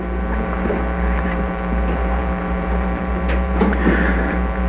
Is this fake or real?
fake